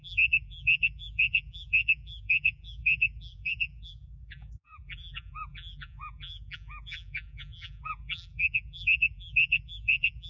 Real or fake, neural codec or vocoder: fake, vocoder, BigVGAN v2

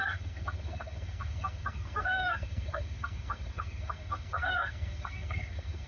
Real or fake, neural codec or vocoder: fake, codec, SNAC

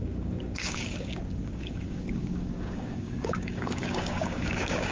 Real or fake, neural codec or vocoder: fake, codec, DAC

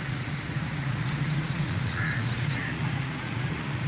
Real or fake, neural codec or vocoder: fake, vocoder, Vocos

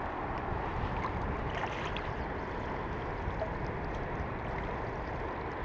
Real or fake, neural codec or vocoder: real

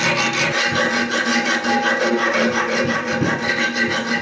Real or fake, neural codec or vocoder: real